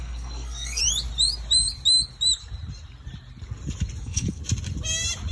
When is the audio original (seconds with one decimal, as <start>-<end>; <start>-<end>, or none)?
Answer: 0.8-4.0; 4.4-5.3